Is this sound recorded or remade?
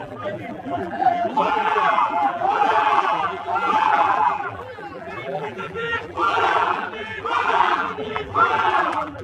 remade